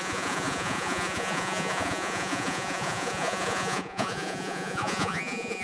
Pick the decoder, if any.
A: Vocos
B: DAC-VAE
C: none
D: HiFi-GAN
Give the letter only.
A